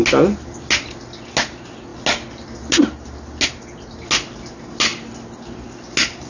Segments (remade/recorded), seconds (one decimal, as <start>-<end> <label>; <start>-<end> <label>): 0.0-6.3 recorded